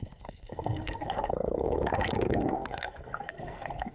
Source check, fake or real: fake